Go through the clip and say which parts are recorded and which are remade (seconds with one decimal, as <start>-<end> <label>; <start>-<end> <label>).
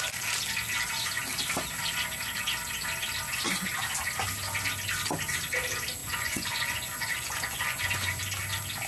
0.0-6.0 recorded; 6.0-8.2 remade; 8.2-8.9 recorded